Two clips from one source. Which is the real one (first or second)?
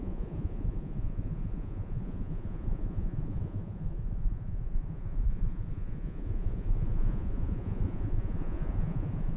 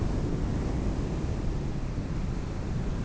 second